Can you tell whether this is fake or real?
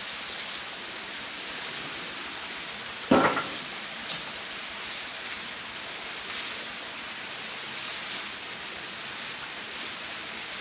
real